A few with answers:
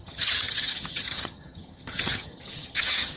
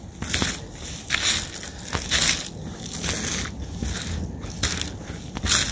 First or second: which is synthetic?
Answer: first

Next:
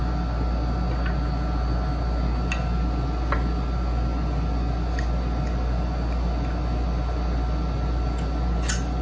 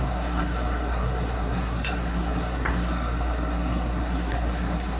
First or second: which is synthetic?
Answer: second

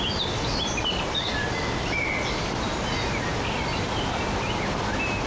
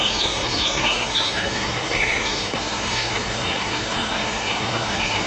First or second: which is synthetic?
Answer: second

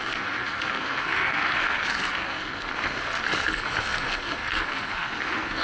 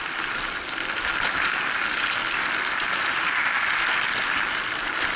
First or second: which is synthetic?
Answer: first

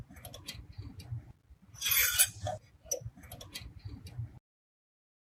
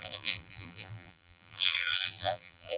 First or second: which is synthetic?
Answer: second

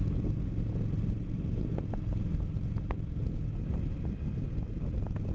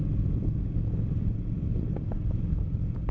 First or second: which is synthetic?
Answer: second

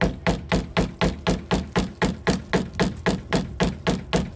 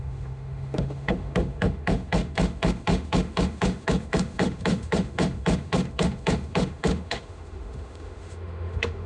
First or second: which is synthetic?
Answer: second